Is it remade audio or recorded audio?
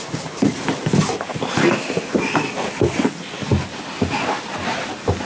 recorded